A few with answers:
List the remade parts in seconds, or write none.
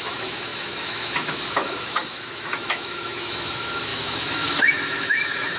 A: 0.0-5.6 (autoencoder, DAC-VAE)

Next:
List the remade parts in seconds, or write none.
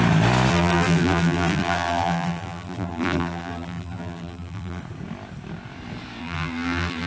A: 0.5-4.8 (vocoder, BigVGAN v2); 6.2-7.1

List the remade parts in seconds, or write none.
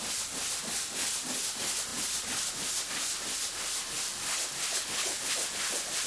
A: 4.7-5.3 (codec, HILCodec)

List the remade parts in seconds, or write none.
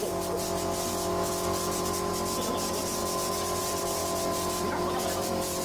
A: 2.1-3.0 (vocoder, BigVGAN v2); 3.6-4.0; 4.8-5.6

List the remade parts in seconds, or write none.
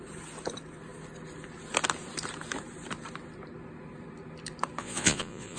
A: 4.8-5.6 (vocoder, Vocos)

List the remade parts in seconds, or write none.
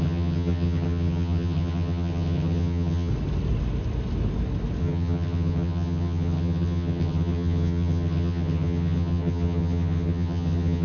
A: 0.0-3.1 (vocoder, HiFi-GAN); 4.8-10.8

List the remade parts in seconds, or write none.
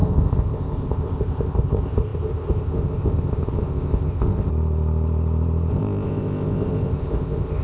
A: 0.0-4.5 (codec, ZipCodec); 5.7-7.6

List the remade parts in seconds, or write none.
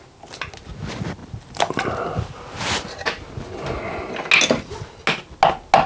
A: none